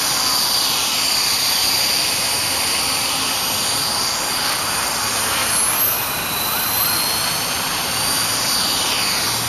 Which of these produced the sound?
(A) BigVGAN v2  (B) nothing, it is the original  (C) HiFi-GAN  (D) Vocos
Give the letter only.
B